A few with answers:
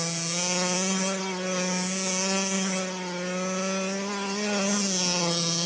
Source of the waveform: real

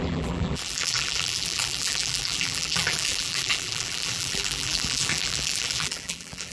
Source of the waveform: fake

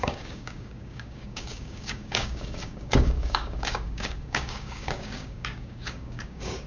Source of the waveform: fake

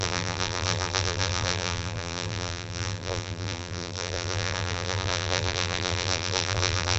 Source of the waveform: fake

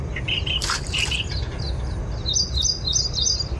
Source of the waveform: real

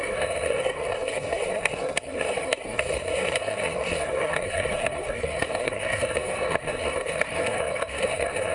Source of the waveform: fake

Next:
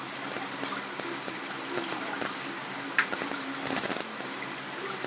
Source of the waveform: real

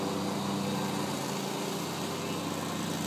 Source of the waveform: real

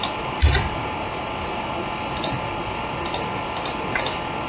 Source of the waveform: real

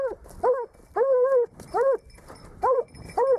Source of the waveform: real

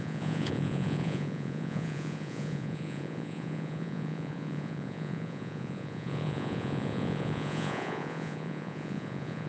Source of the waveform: fake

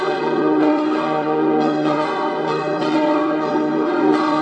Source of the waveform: fake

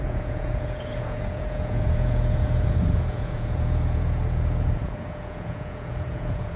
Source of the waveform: fake